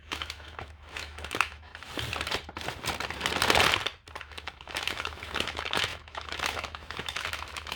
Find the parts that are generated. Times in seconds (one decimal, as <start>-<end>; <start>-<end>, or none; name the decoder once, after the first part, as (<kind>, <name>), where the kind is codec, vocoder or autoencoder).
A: 0.0-1.7 (autoencoder, DAC-VAE); 4.2-7.8